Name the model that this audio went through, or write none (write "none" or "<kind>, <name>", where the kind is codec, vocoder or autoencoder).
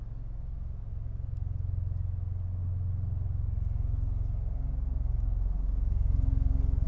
none